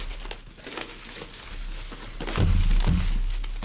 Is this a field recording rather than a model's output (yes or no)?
yes